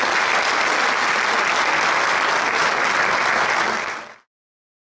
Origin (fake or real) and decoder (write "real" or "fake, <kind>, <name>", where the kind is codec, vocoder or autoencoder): real